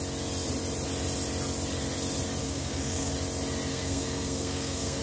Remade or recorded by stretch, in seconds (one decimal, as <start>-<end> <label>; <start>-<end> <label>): 0.0-2.4 recorded; 2.4-3.1 remade; 3.1-3.7 recorded; 3.7-5.0 remade